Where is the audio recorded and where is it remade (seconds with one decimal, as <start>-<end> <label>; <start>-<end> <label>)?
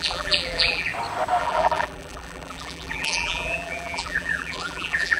0.0-0.9 remade; 0.9-1.4 recorded; 1.4-5.2 remade